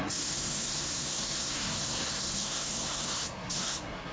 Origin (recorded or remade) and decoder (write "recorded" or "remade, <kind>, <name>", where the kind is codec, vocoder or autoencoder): remade, codec, SNAC